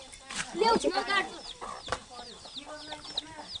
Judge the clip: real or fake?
real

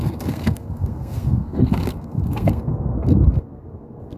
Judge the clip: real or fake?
fake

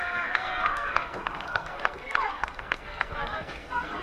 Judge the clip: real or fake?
fake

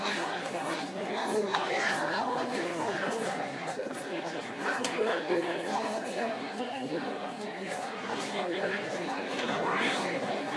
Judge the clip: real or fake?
fake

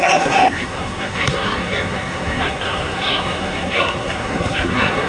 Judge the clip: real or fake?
fake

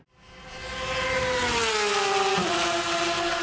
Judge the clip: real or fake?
real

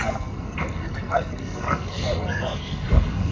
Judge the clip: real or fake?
fake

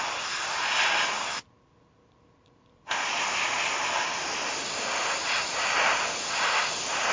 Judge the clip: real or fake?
real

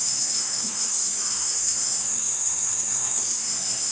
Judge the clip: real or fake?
fake